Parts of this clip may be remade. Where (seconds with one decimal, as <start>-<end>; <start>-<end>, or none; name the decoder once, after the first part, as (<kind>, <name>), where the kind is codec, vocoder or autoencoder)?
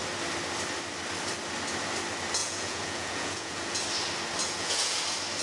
2.4-3.8 (vocoder, Vocos); 4.4-5.0